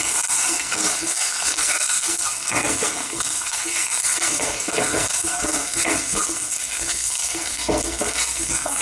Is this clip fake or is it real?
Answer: fake